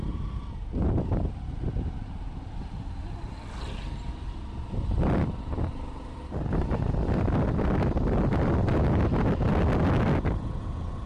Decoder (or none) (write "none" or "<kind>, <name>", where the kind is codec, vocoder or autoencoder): none